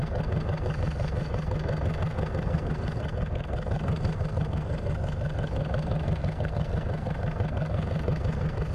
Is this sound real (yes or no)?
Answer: no